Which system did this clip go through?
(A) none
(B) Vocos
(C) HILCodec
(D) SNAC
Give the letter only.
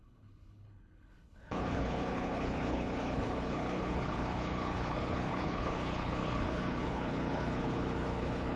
C